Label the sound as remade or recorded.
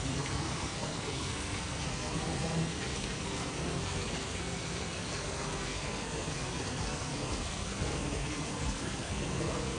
remade